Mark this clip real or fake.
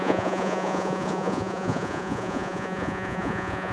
fake